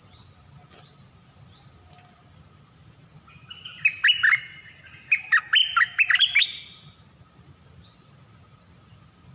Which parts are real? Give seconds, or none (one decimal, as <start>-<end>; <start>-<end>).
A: 0.0-5.6; 6.2-9.3